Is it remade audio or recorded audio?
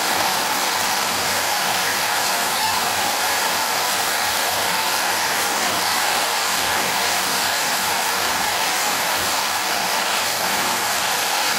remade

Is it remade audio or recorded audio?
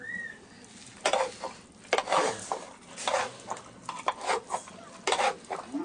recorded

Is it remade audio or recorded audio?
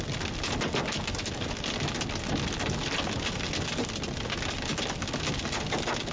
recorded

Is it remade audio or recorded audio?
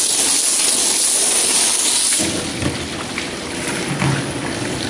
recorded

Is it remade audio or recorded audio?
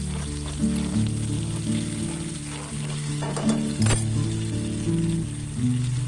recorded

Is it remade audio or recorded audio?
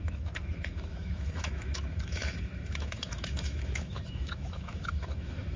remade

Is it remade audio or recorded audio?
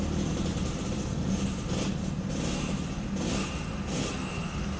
recorded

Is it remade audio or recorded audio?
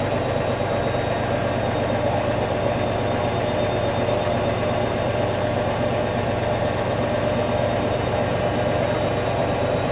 recorded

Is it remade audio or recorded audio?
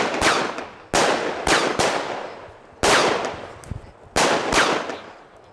recorded